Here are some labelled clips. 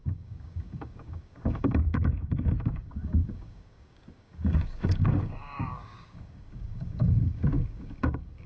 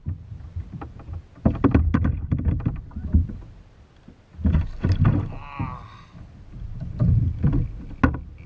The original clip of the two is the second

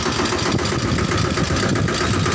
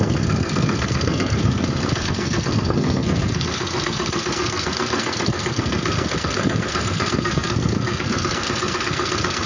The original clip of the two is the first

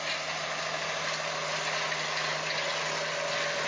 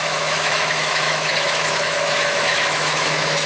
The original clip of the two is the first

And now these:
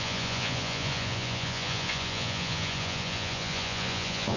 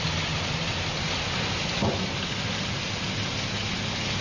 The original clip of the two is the second